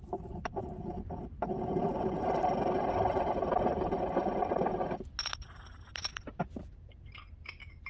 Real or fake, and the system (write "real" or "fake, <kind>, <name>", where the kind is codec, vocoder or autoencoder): real